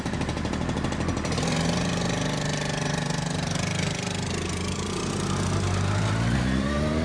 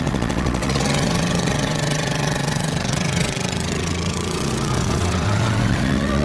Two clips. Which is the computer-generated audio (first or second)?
second